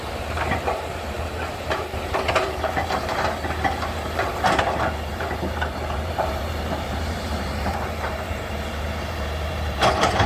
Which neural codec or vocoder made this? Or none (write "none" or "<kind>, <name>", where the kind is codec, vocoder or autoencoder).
vocoder, BigVGAN v2